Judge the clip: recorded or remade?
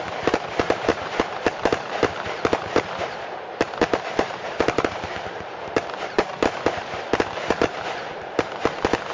remade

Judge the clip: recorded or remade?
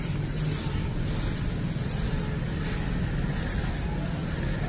recorded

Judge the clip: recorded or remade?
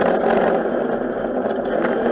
recorded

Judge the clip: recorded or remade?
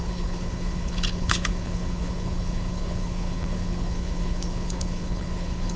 remade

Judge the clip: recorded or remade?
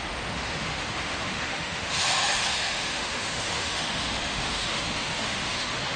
remade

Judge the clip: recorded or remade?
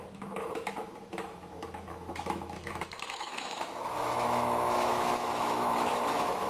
remade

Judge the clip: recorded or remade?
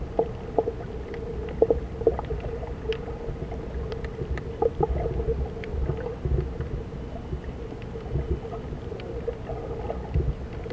recorded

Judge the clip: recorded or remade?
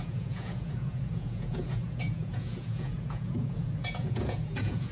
remade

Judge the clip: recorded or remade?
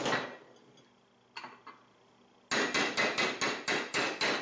recorded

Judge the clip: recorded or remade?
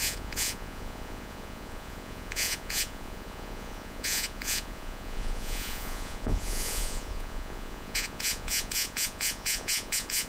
remade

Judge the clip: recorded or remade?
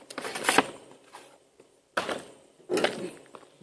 recorded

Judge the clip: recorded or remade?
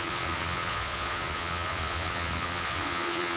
remade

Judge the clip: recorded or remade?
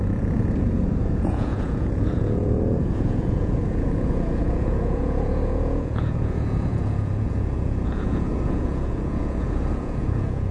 remade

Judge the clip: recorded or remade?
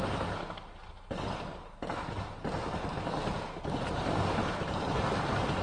recorded